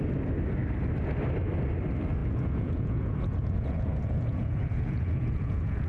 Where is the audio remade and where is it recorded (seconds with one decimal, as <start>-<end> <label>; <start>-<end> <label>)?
0.0-2.2 recorded; 2.2-5.9 remade